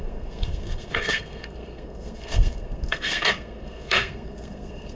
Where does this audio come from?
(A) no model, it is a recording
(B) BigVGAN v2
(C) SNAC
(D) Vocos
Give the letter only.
C